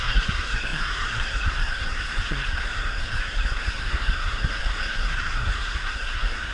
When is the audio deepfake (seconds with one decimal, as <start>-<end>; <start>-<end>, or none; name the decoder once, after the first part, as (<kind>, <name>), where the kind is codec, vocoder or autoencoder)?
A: 0.0-6.5 (codec, SNAC)